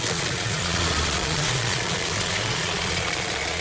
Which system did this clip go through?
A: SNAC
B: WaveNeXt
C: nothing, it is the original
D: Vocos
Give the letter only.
D